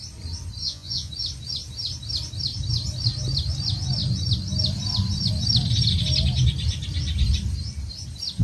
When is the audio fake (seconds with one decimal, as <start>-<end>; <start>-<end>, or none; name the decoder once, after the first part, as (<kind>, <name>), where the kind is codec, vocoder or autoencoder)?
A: 0.6-1.1 (vocoder, Vocos)